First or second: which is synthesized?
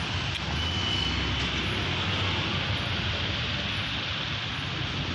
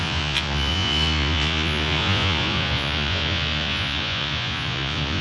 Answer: second